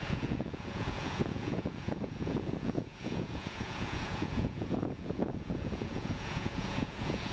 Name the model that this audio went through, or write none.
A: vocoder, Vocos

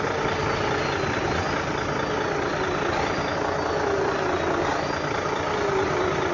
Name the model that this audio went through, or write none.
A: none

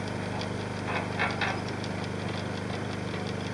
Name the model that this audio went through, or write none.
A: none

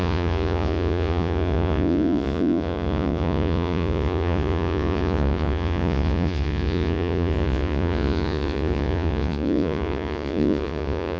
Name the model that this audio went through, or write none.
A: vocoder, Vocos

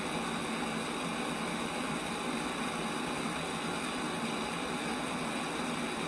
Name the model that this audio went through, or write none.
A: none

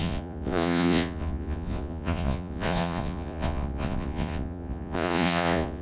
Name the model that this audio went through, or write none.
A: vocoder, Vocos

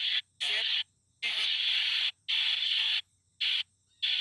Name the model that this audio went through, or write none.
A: none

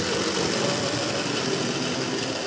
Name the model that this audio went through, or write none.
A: none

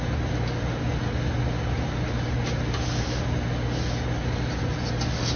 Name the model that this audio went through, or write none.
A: none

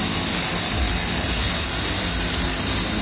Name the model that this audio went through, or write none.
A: none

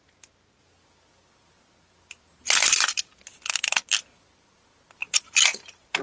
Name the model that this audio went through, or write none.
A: none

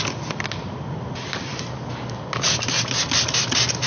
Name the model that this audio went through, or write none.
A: none